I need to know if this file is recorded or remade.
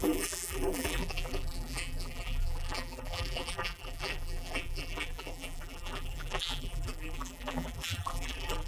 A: remade